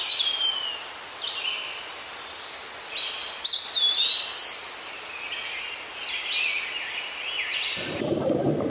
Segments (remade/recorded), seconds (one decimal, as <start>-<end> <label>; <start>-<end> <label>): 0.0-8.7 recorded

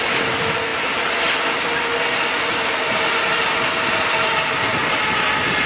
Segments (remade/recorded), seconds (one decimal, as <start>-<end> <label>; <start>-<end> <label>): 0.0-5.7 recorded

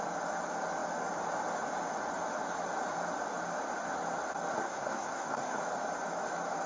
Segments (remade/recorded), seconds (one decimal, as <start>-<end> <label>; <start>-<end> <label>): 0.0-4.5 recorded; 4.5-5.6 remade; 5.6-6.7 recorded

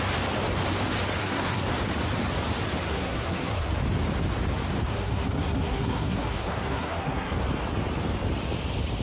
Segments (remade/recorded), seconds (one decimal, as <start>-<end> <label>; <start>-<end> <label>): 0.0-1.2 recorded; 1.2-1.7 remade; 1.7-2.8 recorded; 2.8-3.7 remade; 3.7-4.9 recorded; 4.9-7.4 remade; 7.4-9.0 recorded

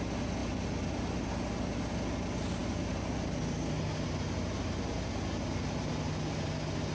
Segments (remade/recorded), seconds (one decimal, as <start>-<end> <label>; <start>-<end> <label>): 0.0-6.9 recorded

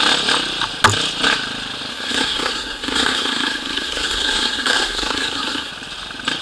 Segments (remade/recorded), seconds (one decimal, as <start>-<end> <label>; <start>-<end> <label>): 0.0-1.9 recorded; 1.9-5.7 remade; 5.7-6.4 recorded